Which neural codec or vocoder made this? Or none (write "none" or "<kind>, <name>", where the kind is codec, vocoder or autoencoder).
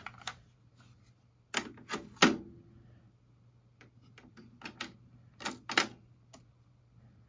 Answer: none